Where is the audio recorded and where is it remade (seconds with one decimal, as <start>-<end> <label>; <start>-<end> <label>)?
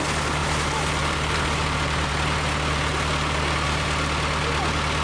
0.0-0.4 recorded; 0.4-2.1 remade; 2.1-5.0 recorded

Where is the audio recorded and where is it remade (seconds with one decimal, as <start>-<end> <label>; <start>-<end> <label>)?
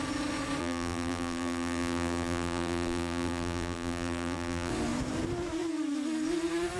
0.0-0.6 recorded; 0.6-4.7 remade; 4.7-6.8 recorded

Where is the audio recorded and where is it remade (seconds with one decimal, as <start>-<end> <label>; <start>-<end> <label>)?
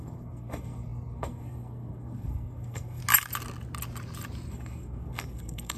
0.0-3.0 remade; 3.0-4.5 recorded; 4.5-5.8 remade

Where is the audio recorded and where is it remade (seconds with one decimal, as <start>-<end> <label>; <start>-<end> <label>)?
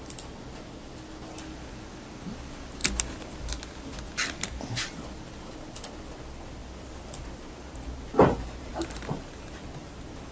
0.0-10.3 recorded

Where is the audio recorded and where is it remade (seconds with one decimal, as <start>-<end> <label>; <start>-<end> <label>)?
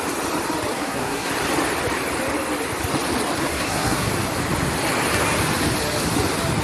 0.0-0.7 recorded; 0.7-1.3 remade; 1.3-3.4 recorded; 3.4-4.1 remade; 4.1-6.6 recorded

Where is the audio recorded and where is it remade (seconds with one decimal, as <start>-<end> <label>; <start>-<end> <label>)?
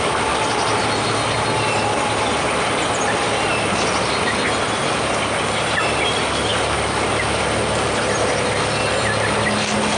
0.0-10.0 recorded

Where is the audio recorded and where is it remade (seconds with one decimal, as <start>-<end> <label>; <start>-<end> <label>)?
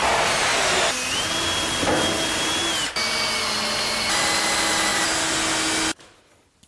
0.0-6.7 recorded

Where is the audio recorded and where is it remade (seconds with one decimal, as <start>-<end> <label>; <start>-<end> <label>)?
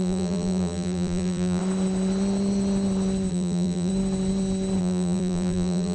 0.0-1.6 remade; 1.6-3.3 recorded; 3.3-3.9 remade; 3.9-4.8 recorded; 4.8-5.9 remade